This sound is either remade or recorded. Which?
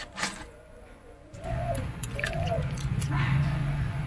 remade